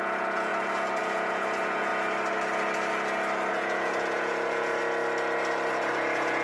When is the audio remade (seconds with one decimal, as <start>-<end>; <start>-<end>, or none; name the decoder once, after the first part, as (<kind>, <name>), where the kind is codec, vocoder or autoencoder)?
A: 0.0-0.5 (vocoder, Vocos); 1.0-1.9; 3.5-4.8; 5.7-6.4

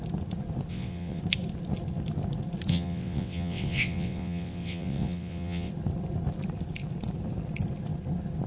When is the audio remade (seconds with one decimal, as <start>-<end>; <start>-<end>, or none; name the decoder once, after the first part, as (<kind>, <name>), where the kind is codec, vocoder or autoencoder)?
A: 0.7-1.2 (vocoder, WaveNeXt); 2.7-5.7

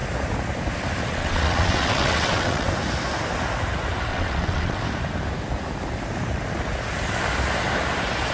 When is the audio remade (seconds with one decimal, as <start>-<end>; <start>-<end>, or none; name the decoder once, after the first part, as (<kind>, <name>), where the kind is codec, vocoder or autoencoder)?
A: 1.1-2.7 (vocoder, WaveNeXt); 4.1-4.8

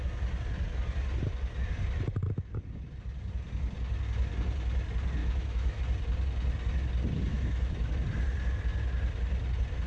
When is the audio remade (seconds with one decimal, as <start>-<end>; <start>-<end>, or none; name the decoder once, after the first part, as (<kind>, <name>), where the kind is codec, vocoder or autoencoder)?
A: 5.2-5.8 (autoencoder, DAC-VAE); 7.3-7.9

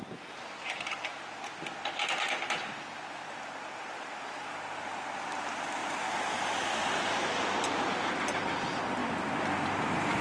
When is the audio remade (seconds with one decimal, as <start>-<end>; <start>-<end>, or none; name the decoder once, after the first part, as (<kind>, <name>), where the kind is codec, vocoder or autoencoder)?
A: 0.0-10.2 (vocoder, BigVGAN v2)

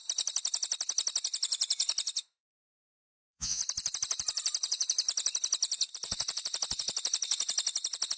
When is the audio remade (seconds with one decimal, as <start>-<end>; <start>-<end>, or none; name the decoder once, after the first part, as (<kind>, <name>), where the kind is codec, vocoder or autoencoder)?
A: 3.2-3.6 (vocoder, Vocos)

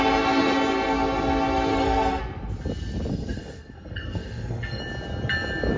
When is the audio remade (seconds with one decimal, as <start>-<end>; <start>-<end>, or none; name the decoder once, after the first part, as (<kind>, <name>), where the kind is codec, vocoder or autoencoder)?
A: 1.7-2.2 (codec, SNAC); 3.1-4.8